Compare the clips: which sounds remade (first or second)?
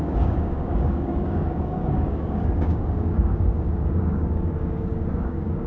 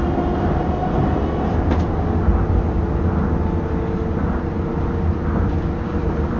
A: first